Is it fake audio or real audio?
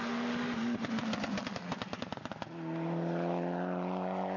real